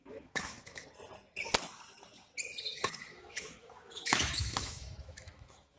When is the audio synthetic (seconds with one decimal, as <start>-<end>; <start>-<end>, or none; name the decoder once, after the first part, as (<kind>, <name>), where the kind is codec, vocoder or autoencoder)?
0.0-0.8 (autoencoder, DAC-VAE); 2.7-5.8